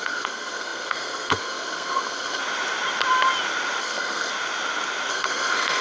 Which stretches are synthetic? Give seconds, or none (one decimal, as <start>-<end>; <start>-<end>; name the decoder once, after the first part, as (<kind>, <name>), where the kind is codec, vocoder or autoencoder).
0.0-2.4 (codec, SNAC); 3.8-4.3; 5.1-5.8